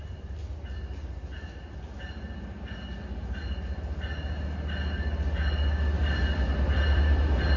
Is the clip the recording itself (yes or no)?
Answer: yes